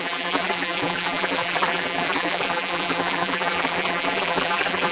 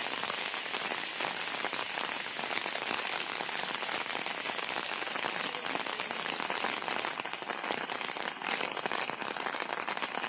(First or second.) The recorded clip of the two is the second